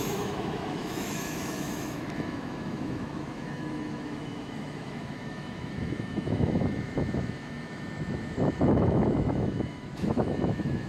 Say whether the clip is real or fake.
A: fake